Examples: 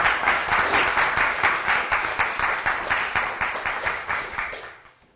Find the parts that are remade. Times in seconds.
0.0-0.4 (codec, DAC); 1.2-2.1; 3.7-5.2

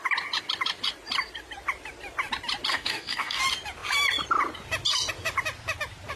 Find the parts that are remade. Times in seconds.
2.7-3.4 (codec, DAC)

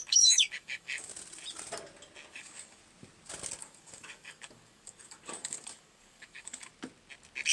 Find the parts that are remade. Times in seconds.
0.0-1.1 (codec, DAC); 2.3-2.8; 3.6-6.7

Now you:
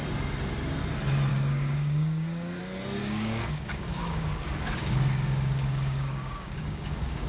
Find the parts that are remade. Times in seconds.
1.3-2.6 (codec, DAC); 3.0-7.3

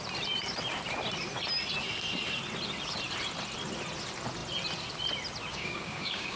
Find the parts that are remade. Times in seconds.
5.5-6.4 (codec, DAC)

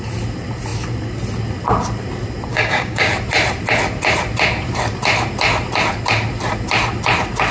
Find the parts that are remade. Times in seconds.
2.5-3.1 (codec, DAC)

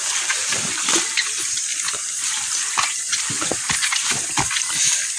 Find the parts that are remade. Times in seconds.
none